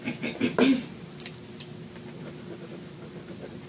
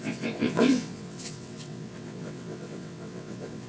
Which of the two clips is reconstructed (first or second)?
second